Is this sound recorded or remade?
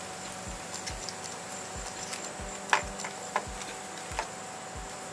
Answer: recorded